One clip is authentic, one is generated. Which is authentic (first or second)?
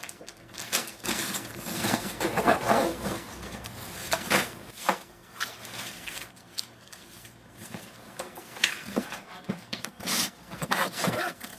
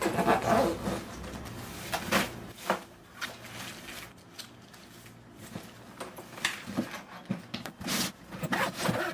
second